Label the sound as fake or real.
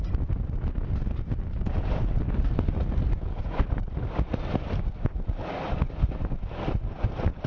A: real